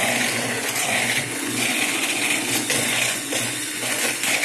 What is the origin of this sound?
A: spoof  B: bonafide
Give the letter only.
A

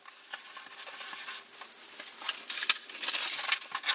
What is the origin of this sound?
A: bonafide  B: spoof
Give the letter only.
A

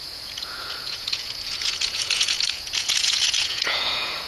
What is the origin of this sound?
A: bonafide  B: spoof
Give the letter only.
B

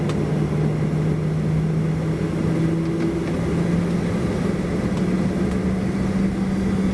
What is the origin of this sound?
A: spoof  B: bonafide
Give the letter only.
B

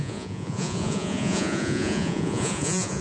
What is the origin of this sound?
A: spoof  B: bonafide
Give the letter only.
A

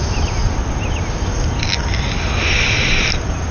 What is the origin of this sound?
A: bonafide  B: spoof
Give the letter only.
A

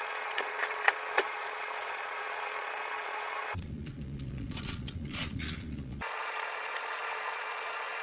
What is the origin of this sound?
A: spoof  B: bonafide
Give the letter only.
A